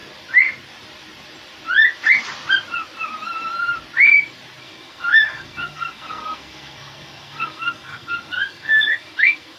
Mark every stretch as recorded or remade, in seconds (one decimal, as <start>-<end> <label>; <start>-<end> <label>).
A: 0.0-4.6 recorded; 4.6-9.6 remade